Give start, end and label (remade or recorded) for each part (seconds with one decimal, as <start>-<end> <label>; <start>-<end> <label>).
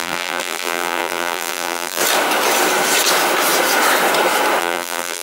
0.0-2.0 remade; 2.0-4.6 recorded; 4.6-5.2 remade